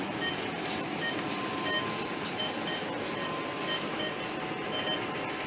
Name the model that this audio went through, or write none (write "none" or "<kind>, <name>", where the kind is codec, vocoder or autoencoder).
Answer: none